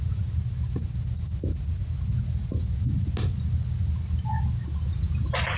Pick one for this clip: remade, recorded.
recorded